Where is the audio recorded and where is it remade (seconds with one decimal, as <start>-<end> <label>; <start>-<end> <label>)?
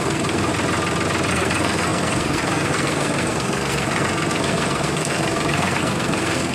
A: 0.0-0.5 remade; 0.5-1.3 recorded; 1.3-6.5 remade